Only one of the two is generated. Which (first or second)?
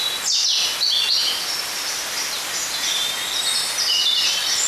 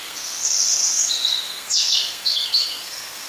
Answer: second